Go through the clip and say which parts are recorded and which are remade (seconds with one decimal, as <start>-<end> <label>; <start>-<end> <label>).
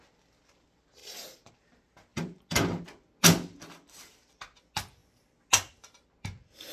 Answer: 0.0-1.0 recorded; 1.0-1.5 remade; 1.5-6.7 recorded